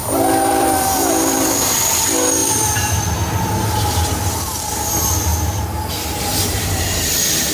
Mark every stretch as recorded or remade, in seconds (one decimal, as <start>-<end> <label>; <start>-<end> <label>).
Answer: 0.0-5.3 remade; 5.3-6.2 recorded; 6.2-7.5 remade